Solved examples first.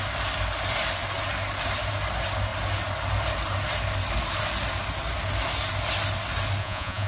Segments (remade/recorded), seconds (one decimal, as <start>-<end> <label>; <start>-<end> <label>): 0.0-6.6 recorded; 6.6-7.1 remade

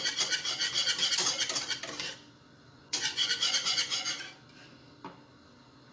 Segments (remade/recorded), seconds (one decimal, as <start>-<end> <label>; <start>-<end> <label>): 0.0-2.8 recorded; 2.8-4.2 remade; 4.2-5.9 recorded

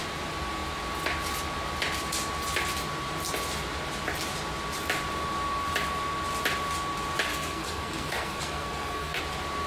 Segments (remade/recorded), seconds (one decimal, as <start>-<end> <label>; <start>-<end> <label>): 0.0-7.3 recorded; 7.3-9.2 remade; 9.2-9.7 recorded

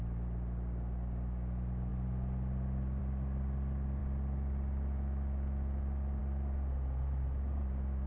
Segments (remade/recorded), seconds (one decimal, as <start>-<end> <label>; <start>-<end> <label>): 0.0-8.1 recorded

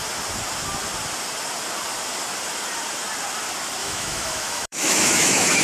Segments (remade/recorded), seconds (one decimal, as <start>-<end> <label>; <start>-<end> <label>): 0.0-3.8 recorded; 3.8-5.6 remade

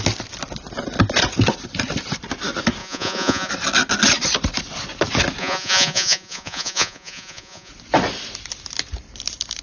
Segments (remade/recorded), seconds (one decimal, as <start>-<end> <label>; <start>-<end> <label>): 0.0-2.8 recorded; 2.8-3.5 remade; 3.5-5.4 recorded; 5.4-7.7 remade; 7.7-9.6 recorded